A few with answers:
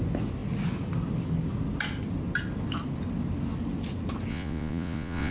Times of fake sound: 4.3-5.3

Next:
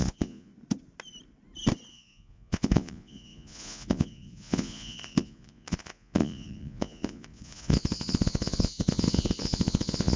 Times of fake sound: 0.0-0.5; 1.9-10.2

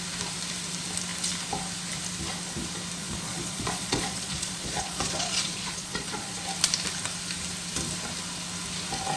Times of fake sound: 3.0-6.4

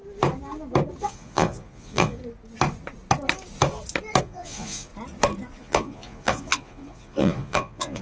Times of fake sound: 1.0-2.2; 4.2-4.9; 5.6-8.0

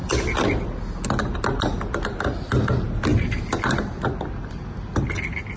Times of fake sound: none

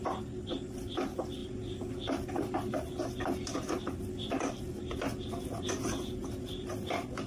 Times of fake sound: none

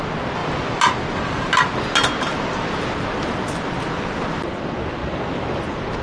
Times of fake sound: none

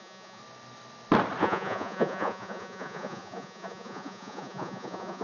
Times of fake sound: 0.0-0.4; 1.4-5.2